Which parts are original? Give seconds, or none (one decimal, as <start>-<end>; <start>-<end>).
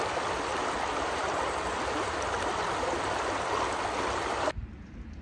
0.0-5.2